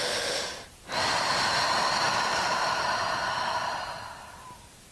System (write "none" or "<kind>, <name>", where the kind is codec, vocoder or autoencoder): none